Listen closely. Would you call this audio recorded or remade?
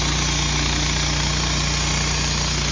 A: recorded